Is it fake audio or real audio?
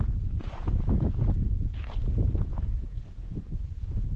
fake